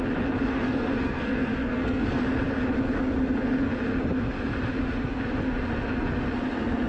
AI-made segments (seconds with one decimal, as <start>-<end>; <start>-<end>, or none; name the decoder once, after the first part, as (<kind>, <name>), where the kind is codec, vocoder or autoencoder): 0.5-2.2 (codec, SNAC)